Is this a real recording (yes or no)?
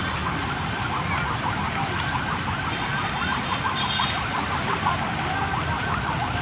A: yes